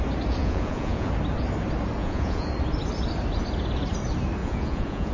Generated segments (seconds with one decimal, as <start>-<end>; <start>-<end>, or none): 0.4-1.1; 2.0-2.5; 4.4-5.1